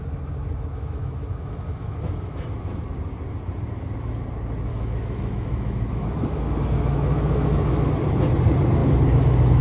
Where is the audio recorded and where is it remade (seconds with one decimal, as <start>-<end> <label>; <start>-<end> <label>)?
0.0-0.7 recorded; 0.7-2.8 remade; 2.8-4.7 recorded; 4.7-7.9 remade; 7.9-9.6 recorded